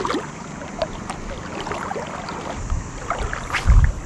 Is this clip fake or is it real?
real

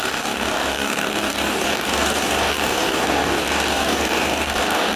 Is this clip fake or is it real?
fake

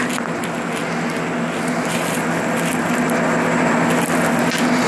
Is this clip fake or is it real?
real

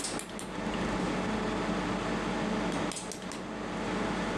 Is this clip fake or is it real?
real